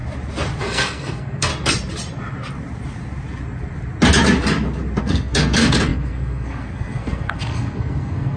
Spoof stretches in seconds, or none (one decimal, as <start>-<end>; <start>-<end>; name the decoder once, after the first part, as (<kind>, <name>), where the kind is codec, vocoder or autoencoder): 0.6-1.5 (codec, SNAC); 5.0-8.4